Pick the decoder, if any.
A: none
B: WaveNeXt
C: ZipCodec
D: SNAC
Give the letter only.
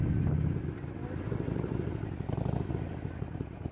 A